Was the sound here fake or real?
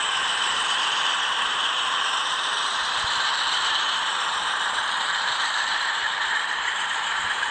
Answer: fake